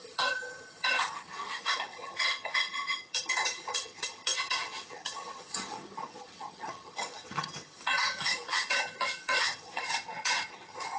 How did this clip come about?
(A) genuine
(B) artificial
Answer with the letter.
B